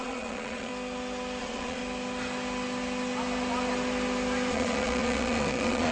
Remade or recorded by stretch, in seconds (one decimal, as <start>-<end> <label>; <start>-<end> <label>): 0.0-0.7 remade; 0.7-1.4 recorded; 1.4-1.8 remade; 1.8-4.5 recorded; 4.5-5.9 remade